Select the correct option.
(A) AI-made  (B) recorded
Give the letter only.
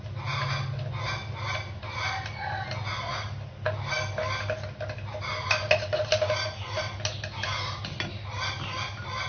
B